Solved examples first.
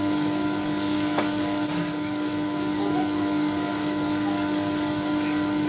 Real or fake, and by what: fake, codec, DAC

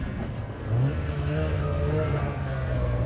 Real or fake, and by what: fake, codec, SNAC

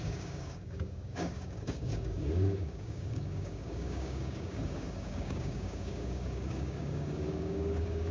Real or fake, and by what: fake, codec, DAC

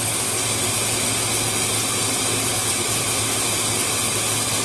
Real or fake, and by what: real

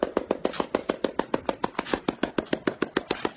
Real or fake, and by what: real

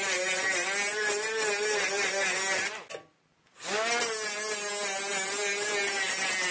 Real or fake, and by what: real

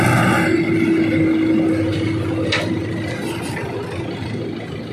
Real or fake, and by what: real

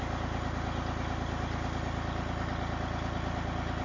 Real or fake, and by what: real